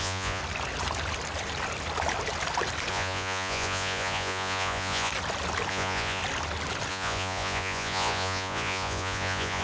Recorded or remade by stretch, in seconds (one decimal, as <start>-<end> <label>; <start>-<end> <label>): 0.0-0.4 remade; 0.4-2.9 recorded; 2.9-5.1 remade; 5.1-5.7 recorded; 5.7-6.2 remade; 6.2-6.9 recorded; 6.9-9.6 remade